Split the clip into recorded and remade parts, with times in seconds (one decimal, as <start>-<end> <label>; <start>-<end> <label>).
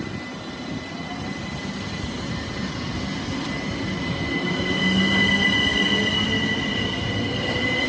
0.0-7.9 recorded